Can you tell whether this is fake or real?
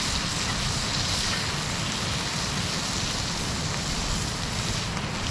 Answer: real